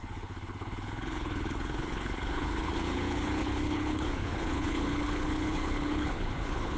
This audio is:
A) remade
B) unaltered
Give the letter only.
A